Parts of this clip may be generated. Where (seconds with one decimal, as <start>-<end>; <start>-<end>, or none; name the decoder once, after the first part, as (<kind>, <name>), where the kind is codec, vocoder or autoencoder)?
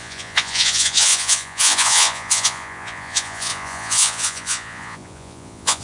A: 0.0-5.8 (vocoder, Vocos)